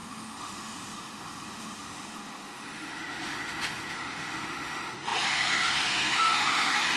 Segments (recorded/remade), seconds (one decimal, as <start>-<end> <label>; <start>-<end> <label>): 0.0-7.0 remade